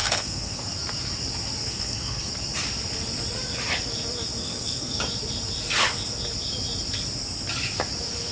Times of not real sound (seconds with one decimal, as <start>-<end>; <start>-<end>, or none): 0.0-0.6; 1.6-2.3; 4.4-5.0